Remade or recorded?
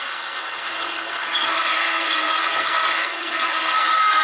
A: remade